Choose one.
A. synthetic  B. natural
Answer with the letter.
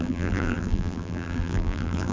A